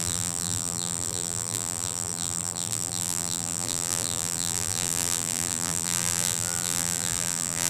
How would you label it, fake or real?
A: fake